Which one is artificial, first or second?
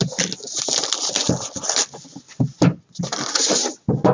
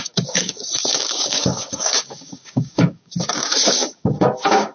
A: second